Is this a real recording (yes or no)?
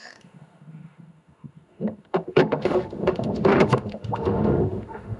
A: no